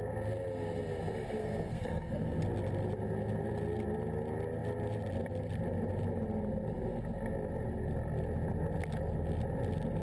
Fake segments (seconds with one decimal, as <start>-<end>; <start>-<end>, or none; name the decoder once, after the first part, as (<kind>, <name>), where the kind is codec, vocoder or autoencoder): 1.4-2.4 (codec, SNAC)